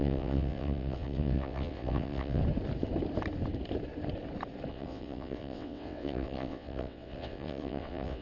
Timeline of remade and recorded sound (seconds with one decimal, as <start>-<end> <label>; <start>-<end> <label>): 0.0-2.4 remade; 2.4-4.7 recorded; 4.7-8.2 remade